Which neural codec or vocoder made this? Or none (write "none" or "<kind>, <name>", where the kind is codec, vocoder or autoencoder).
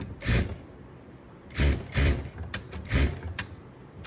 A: vocoder, BigVGAN v2